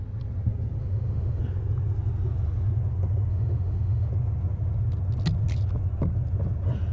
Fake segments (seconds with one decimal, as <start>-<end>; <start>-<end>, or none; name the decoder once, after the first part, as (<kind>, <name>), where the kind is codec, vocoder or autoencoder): 0.8-1.4 (autoencoder, DAC-VAE); 3.3-4.1